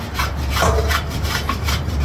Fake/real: fake